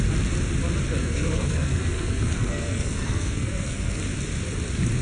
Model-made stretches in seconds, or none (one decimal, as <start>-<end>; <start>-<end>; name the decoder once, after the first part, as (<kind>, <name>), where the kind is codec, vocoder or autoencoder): 1.0-4.0 (codec, SNAC)